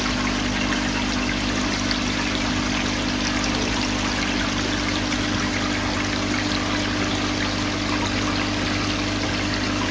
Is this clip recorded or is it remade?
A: recorded